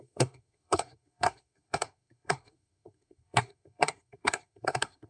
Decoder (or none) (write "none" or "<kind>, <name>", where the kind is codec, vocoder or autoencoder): codec, SNAC